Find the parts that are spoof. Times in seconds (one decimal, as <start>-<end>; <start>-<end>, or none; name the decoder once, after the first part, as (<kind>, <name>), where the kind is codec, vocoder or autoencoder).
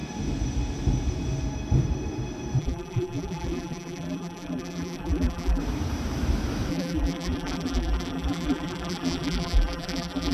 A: 2.6-5.6 (vocoder, BigVGAN v2); 6.7-10.3